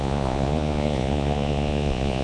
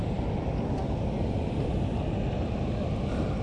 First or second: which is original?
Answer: second